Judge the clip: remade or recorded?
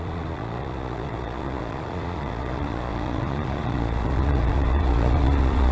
remade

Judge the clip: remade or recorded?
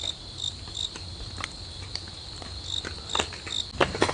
recorded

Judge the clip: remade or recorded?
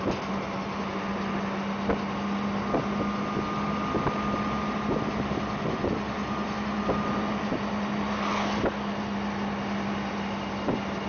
recorded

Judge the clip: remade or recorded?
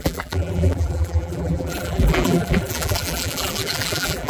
remade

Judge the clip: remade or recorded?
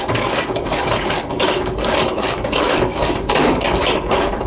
remade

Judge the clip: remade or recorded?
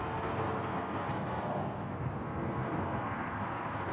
remade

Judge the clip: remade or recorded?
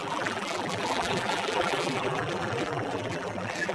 remade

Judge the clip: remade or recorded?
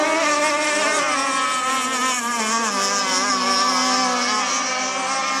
recorded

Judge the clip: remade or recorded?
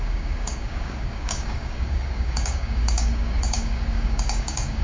remade